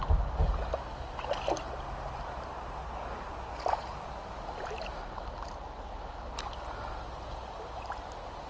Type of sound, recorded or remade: recorded